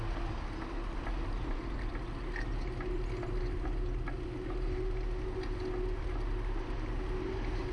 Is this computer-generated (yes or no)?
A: no